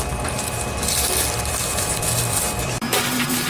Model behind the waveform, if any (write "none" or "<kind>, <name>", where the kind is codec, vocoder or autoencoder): vocoder, BigVGAN v2